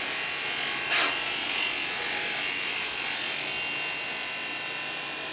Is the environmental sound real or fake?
real